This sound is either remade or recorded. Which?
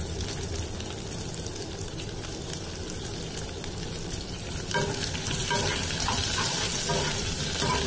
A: recorded